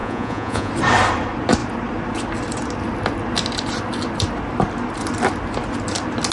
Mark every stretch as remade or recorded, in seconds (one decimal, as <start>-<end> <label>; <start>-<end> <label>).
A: 0.0-0.7 remade; 0.7-6.3 recorded